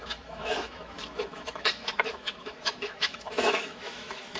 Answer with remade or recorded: remade